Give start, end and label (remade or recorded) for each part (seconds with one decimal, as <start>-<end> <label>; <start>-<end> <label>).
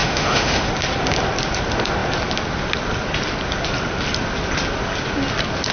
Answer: 0.0-0.7 remade; 0.7-5.7 recorded